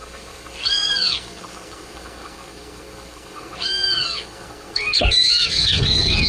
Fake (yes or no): yes